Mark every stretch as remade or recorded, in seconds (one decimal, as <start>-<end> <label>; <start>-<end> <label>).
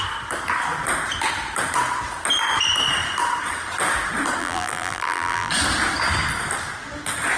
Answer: 0.0-4.4 recorded; 4.4-5.5 remade; 5.5-7.4 recorded